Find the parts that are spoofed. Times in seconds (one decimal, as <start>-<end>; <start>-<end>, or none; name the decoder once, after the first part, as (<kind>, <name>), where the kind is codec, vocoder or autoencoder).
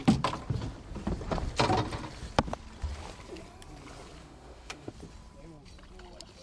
4.2-4.9 (autoencoder, DAC-VAE)